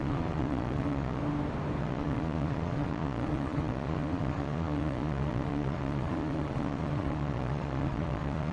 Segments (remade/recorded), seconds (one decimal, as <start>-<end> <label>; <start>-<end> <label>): 0.0-1.2 remade; 1.2-1.8 recorded; 1.8-8.5 remade